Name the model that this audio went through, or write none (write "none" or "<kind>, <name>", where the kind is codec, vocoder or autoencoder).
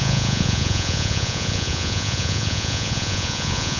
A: vocoder, Vocos